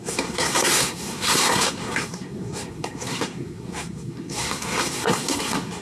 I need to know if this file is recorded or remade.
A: remade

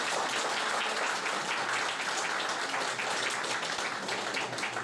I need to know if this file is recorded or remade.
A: recorded